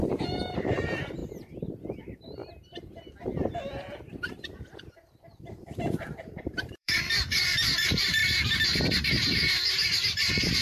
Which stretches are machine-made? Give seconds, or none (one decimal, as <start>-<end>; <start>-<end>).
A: 0.0-1.2; 2.0-2.4; 5.4-10.6